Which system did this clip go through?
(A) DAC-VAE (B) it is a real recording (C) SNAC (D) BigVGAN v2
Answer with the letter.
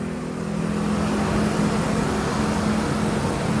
B